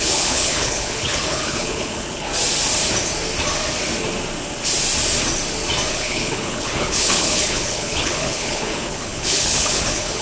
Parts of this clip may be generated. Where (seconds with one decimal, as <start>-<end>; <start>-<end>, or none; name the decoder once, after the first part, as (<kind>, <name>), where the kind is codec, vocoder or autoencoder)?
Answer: 0.0-2.3 (codec, HILCodec); 5.9-10.2